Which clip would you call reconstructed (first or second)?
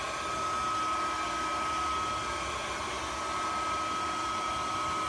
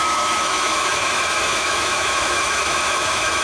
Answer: second